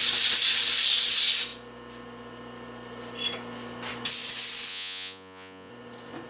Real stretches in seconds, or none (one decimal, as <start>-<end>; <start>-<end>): 0.0-4.7; 5.7-6.3